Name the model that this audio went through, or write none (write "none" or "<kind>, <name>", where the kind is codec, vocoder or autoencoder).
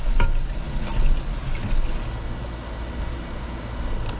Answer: none